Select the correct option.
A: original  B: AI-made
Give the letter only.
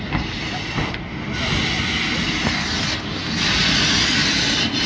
A